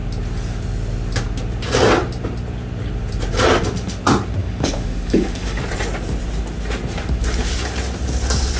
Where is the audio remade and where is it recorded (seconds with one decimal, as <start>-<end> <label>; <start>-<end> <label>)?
0.0-4.4 recorded; 4.4-5.6 remade; 5.6-8.6 recorded